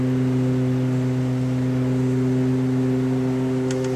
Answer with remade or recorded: recorded